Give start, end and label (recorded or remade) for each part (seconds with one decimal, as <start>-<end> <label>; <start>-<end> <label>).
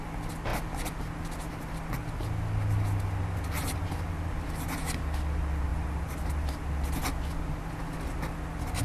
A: 0.0-5.7 recorded; 5.7-6.6 remade; 6.6-8.8 recorded